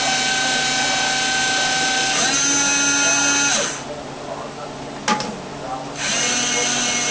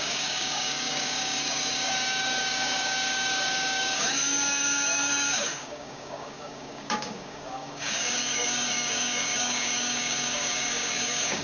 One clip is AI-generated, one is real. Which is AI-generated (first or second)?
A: second